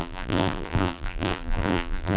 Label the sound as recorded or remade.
remade